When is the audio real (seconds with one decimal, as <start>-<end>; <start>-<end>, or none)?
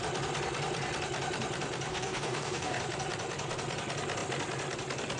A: 0.0-1.9; 2.8-5.2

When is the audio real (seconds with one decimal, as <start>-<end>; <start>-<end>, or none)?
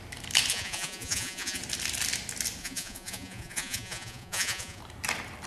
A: 0.0-0.5; 1.6-2.6; 4.8-5.5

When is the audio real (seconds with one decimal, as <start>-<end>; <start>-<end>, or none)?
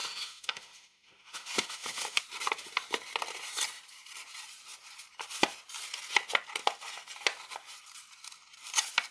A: 2.2-9.1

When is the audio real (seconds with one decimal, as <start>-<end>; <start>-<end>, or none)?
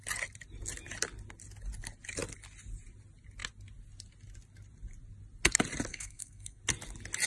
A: 0.0-5.9; 6.6-7.3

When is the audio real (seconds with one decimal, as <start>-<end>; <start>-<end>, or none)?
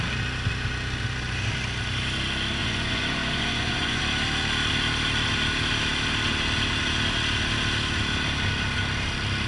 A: 0.0-2.6; 4.0-9.5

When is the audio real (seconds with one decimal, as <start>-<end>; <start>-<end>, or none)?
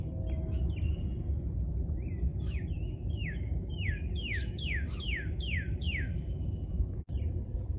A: 0.0-2.3; 7.0-7.8